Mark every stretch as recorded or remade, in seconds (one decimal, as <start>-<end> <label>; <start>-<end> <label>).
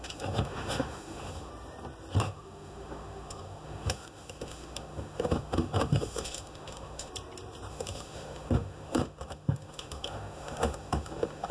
0.0-1.5 remade; 1.5-2.2 recorded; 2.2-7.1 remade; 7.1-7.7 recorded; 7.7-11.5 remade